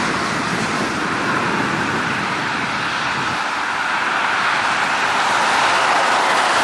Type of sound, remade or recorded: recorded